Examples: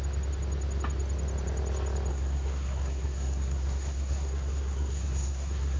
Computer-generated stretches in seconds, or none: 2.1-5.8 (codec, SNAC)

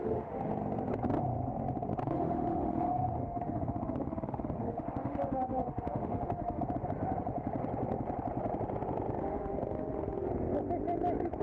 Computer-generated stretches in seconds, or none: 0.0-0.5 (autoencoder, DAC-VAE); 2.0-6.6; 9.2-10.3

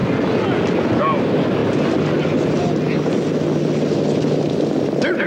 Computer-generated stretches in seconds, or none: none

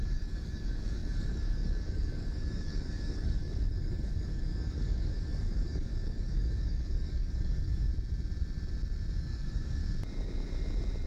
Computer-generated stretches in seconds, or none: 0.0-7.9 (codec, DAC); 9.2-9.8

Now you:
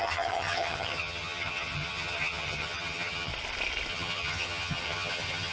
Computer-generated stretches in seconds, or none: 0.0-3.3 (vocoder, HiFi-GAN); 3.9-5.5

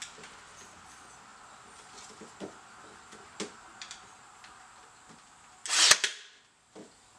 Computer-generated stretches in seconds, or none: none